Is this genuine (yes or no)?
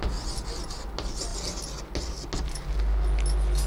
yes